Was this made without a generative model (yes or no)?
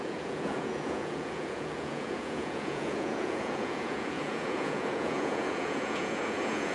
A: no